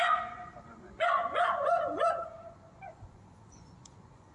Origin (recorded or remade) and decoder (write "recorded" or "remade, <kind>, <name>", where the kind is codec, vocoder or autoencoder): remade, vocoder, Vocos